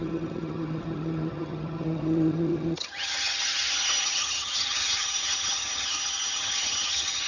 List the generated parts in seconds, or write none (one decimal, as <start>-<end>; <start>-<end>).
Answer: 0.0-7.3